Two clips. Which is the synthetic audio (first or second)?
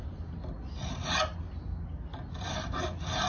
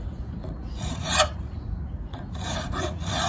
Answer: second